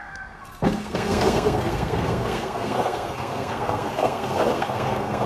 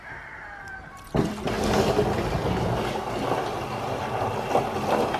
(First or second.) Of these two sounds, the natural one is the second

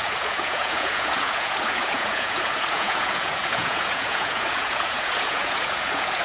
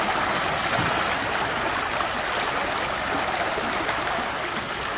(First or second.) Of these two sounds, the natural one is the second